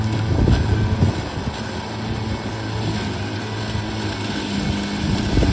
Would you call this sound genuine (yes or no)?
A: yes